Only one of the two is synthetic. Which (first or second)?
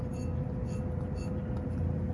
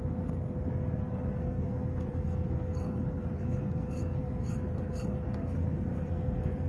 second